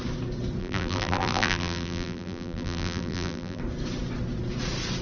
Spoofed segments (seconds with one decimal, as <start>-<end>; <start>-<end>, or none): 0.6-3.6